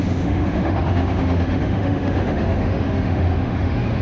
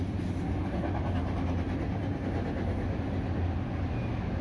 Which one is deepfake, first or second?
first